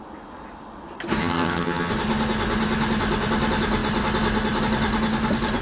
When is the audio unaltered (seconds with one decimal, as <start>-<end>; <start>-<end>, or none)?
0.0-1.2; 1.9-5.6